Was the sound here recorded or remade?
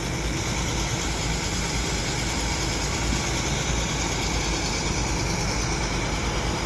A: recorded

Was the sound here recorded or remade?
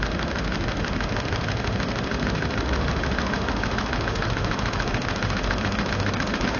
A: remade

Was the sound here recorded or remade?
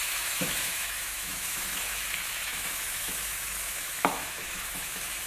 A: remade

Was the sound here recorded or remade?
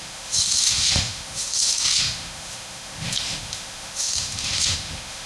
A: remade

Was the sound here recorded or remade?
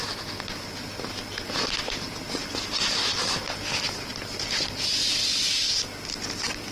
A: recorded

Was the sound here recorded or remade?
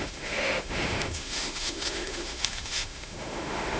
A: remade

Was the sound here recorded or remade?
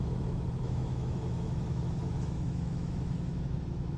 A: remade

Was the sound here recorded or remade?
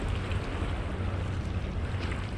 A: recorded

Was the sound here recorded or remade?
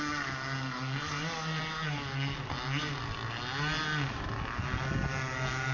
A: recorded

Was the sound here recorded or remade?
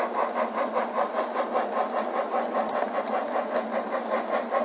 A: recorded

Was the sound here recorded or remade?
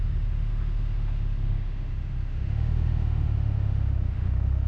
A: remade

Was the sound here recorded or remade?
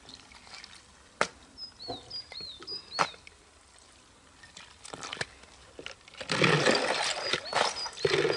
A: recorded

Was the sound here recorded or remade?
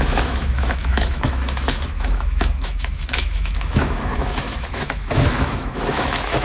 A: remade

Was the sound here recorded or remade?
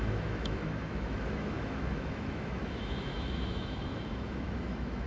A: remade